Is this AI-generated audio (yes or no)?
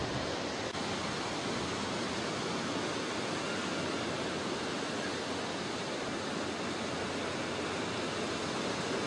no